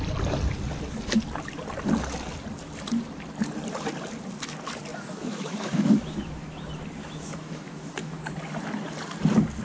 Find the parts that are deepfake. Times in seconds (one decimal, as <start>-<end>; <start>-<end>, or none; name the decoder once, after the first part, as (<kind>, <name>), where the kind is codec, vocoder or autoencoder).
4.9-6.6 (autoencoder, DAC-VAE); 7.0-8.2